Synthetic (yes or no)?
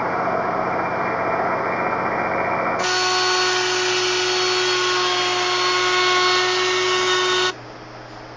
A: no